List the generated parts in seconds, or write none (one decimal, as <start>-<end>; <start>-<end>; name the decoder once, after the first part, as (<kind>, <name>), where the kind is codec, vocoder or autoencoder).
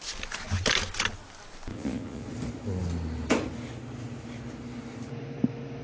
1.7-2.3 (vocoder, Vocos)